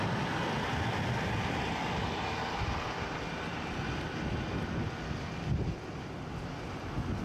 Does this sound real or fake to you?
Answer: real